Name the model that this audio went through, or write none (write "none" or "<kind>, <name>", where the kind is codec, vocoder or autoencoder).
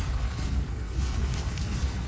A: codec, SNAC